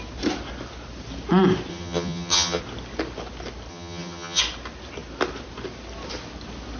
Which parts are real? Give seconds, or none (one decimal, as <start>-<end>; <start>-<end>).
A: 0.0-1.7; 2.6-3.7; 4.4-6.8